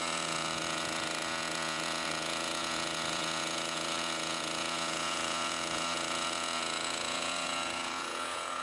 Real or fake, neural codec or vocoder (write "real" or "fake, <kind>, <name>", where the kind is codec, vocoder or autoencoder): fake, vocoder, Vocos